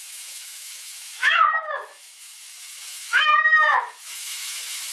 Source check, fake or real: fake